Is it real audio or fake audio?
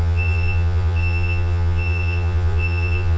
fake